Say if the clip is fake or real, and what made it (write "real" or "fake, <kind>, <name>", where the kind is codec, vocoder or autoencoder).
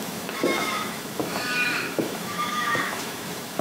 fake, autoencoder, DAC-VAE